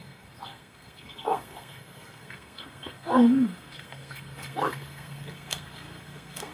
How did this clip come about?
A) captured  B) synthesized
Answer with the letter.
B